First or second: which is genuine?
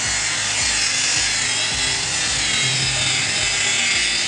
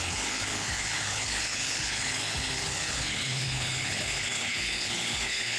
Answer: first